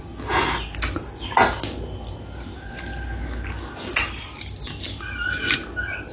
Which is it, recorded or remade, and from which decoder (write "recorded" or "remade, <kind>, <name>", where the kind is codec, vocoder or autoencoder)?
recorded